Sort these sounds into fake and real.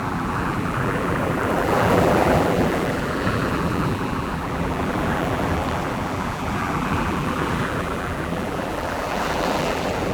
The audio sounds fake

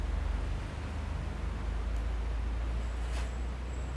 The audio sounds real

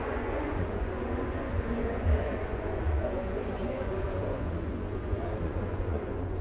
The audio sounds fake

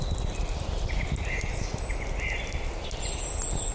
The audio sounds real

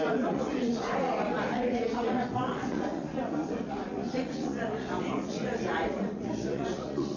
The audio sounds fake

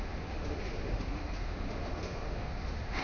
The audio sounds fake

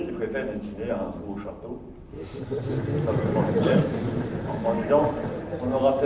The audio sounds real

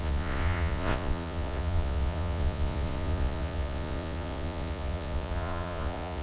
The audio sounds fake